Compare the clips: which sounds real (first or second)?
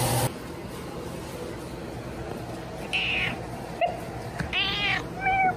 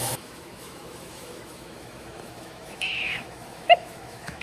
first